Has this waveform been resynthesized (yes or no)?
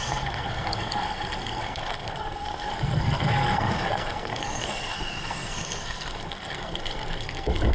yes